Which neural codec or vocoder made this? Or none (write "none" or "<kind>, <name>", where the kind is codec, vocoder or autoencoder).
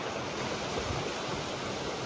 none